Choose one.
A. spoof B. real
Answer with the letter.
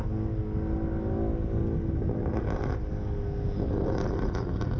B